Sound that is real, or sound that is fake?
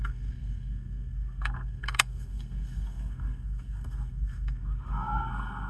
fake